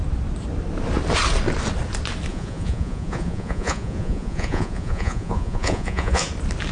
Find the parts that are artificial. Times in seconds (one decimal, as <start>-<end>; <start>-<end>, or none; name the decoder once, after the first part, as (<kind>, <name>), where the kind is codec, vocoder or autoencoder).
2.3-6.3 (vocoder, Vocos)